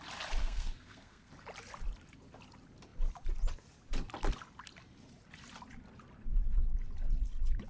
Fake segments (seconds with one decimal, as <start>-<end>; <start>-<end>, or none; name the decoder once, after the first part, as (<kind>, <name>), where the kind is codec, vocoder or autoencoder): 0.4-1.3 (codec, SNAC)